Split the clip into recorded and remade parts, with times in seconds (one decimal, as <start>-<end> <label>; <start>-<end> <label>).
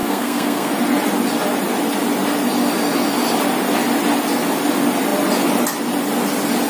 0.0-0.7 remade; 0.7-6.7 recorded